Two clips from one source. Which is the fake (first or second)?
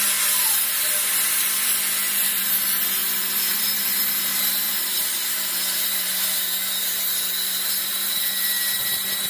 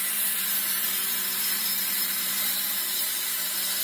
second